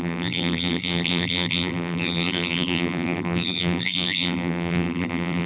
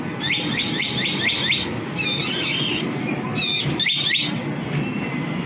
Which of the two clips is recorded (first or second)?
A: second